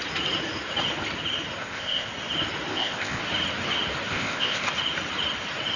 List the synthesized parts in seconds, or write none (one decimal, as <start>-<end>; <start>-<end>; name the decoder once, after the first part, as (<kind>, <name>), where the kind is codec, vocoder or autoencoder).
1.6-2.1 (codec, ZipCodec); 2.7-3.2; 4.1-4.7